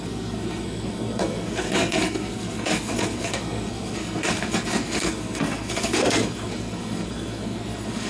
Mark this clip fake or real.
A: fake